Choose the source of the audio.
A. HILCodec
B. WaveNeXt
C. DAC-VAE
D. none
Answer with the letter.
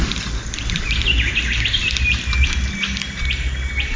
D